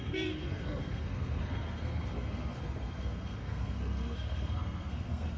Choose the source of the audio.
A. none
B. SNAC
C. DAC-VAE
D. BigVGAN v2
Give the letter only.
B